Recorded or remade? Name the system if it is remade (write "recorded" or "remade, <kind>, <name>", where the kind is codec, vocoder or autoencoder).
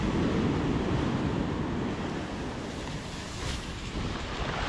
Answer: recorded